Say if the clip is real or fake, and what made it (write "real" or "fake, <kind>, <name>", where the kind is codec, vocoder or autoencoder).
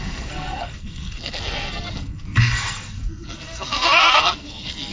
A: fake, codec, SNAC